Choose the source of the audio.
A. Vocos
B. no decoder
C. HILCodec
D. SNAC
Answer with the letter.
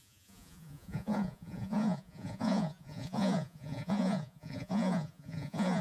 A